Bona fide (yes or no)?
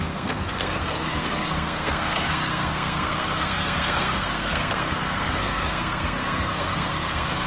no